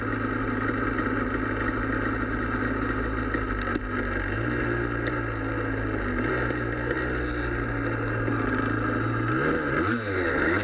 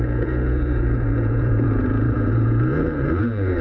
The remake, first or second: second